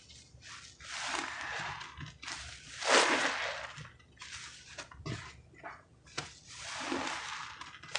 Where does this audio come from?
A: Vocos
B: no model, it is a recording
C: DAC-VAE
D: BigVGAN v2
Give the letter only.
B